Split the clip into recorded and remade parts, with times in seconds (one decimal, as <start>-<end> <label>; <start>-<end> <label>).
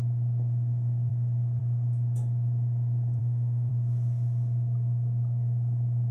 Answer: 0.0-3.2 recorded; 3.2-3.7 remade; 3.7-6.1 recorded